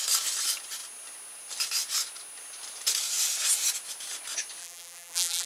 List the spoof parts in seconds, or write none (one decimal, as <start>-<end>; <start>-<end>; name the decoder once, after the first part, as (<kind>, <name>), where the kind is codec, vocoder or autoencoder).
4.6-5.5 (vocoder, BigVGAN v2)